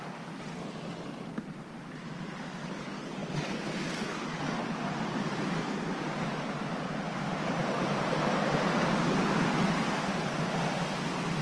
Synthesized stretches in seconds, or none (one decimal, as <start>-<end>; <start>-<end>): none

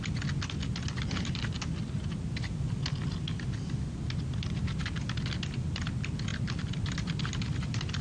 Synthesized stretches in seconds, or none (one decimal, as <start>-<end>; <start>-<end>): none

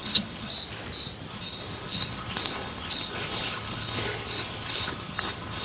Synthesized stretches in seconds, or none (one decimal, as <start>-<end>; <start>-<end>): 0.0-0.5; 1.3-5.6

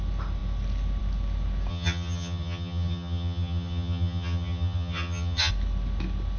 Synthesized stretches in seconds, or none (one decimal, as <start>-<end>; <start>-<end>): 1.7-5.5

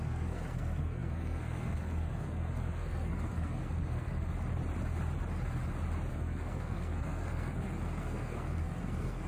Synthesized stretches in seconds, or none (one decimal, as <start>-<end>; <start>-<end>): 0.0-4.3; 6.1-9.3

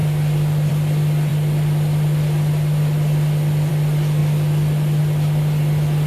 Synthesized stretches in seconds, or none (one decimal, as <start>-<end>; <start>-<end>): none